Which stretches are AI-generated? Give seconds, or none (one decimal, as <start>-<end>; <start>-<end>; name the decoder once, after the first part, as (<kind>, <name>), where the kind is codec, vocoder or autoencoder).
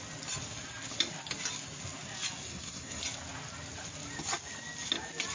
2.5-3.0 (codec, SNAC)